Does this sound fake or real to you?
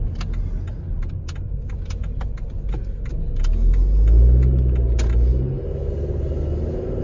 real